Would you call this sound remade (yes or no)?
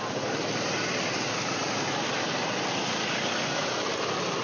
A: no